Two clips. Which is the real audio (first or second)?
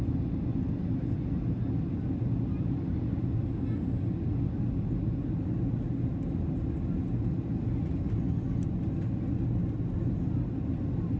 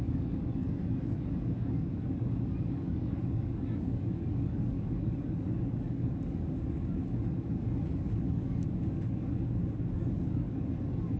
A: first